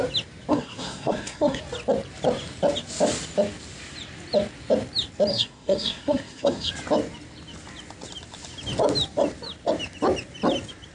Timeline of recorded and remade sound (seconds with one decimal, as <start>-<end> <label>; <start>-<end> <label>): 0.0-0.5 recorded; 0.5-1.6 remade; 1.6-5.3 recorded; 5.3-6.7 remade; 6.7-10.9 recorded

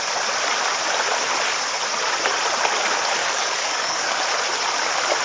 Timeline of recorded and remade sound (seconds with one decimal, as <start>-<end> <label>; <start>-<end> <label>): 0.0-3.2 recorded; 3.2-4.2 remade; 4.2-5.2 recorded

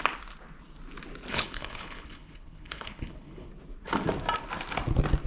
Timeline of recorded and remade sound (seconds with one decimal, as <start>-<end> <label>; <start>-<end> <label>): 0.0-1.3 recorded; 1.3-3.5 remade; 3.5-5.3 recorded

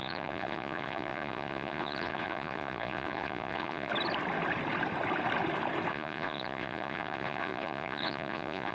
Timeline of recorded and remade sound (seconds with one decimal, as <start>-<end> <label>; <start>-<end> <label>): 0.0-3.9 remade; 3.9-5.9 recorded; 5.9-8.7 remade